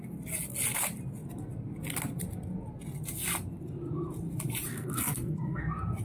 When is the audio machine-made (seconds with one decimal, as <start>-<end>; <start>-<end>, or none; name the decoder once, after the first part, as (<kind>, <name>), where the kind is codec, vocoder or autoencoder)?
4.7-5.6 (codec, SNAC)